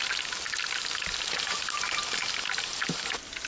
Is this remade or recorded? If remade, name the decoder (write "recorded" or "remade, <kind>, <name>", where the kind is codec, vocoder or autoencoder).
recorded